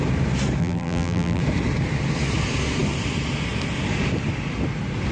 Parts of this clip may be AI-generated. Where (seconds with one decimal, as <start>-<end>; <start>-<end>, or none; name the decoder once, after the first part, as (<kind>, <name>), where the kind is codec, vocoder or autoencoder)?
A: 0.6-1.4 (vocoder, BigVGAN v2)